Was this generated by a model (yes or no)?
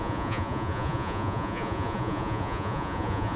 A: yes